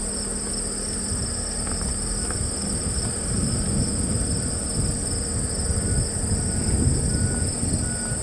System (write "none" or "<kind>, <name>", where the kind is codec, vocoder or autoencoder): none